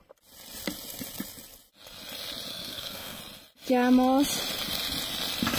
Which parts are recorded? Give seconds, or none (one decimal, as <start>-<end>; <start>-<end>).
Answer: 0.0-2.5; 3.2-5.6